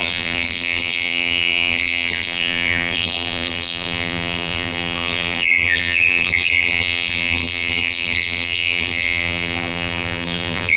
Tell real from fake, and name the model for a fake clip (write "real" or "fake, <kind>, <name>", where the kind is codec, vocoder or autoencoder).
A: fake, vocoder, BigVGAN v2